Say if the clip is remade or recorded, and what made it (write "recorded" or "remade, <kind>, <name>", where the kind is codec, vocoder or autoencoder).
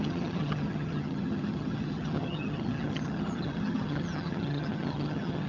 remade, vocoder, HiFi-GAN